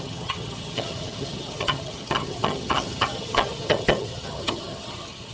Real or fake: fake